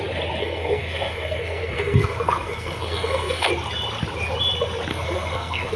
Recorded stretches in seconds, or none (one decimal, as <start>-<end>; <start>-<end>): 0.0-0.4; 3.5-4.9